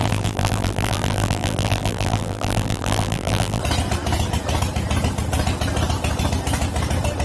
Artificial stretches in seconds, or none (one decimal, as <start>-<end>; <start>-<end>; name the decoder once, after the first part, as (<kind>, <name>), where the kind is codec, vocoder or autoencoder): 0.0-3.6 (vocoder, BigVGAN v2)